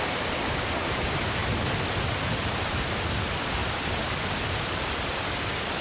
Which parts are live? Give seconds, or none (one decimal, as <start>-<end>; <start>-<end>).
1.4-2.0; 3.6-5.8